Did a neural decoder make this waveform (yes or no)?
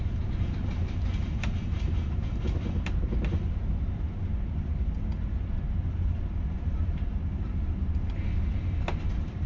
no